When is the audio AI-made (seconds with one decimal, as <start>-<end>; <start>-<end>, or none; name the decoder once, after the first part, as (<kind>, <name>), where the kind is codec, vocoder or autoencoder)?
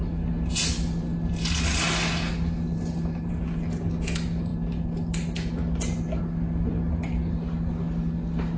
none